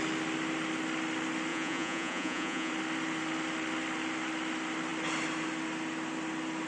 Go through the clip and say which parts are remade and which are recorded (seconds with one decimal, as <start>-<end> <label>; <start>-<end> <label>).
0.0-1.5 recorded; 1.5-2.7 remade; 2.7-6.7 recorded